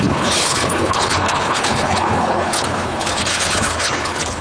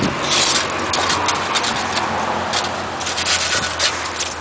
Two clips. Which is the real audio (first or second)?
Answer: second